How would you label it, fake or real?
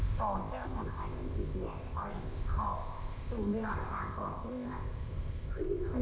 fake